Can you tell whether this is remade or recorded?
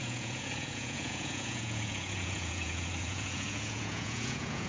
remade